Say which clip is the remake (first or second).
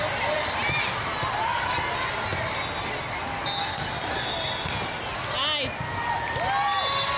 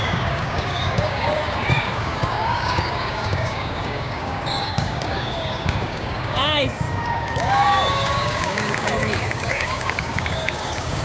second